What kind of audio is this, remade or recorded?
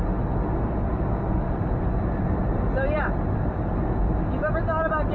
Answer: recorded